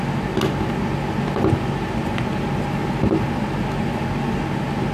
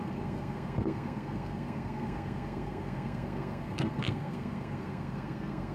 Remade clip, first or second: second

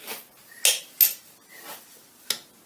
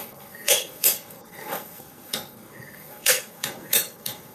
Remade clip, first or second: second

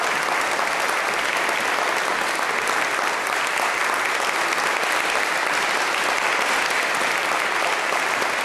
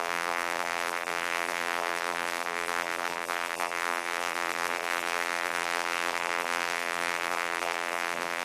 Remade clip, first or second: second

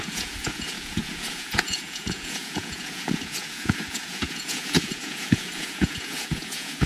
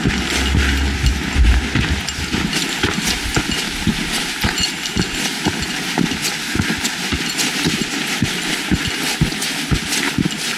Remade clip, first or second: first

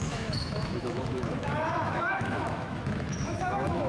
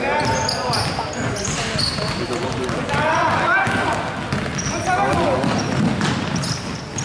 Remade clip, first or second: first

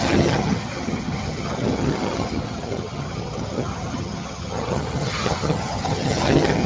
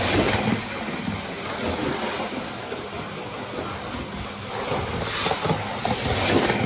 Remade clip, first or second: first